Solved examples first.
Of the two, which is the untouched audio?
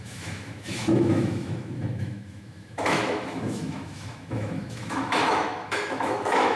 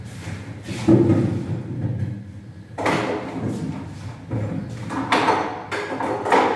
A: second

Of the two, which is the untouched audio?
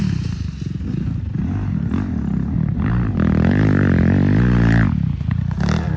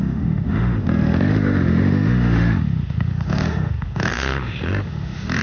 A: first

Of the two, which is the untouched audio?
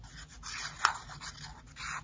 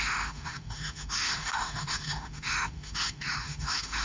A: first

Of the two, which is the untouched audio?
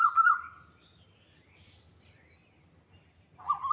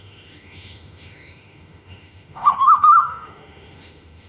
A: first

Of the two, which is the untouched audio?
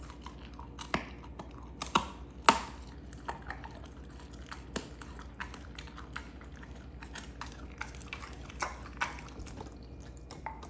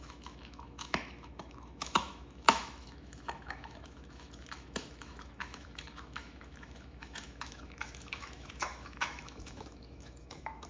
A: first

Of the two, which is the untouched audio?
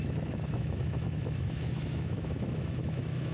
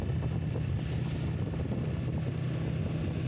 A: second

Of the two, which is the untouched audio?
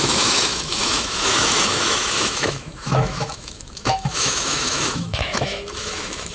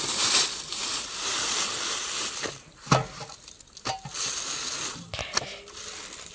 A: second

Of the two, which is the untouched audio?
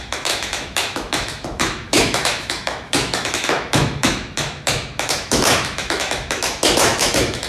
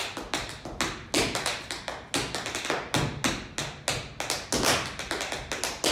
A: second